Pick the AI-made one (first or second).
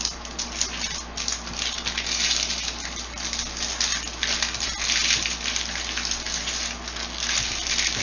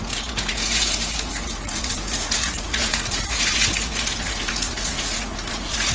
second